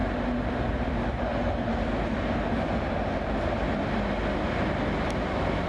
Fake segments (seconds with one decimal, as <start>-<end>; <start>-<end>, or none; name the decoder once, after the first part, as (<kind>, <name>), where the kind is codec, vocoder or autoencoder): none